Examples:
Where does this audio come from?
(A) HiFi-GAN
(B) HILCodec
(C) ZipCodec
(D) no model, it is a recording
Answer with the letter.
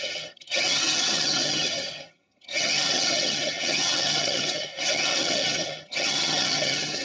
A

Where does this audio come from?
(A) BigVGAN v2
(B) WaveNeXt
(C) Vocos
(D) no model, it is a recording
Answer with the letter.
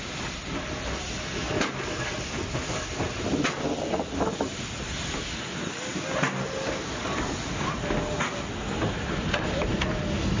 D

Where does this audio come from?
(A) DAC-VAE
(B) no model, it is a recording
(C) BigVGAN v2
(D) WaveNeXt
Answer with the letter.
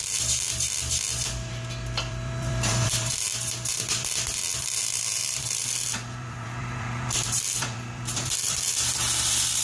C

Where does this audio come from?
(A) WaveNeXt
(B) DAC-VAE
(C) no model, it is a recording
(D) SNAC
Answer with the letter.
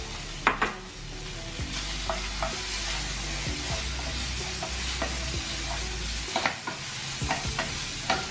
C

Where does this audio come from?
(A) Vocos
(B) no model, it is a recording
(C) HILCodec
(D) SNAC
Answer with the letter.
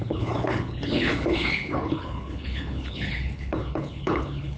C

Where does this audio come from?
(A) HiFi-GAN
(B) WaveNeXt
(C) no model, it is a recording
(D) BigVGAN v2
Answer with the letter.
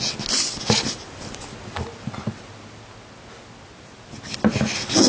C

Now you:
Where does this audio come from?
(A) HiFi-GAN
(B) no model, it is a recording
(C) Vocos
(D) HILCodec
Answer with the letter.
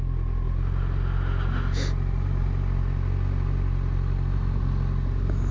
B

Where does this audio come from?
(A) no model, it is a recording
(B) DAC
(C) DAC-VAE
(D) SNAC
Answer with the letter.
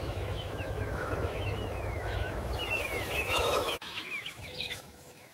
C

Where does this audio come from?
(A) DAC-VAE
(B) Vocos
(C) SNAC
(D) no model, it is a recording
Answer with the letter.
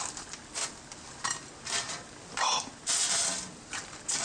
D